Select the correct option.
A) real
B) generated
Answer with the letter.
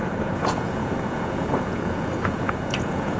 B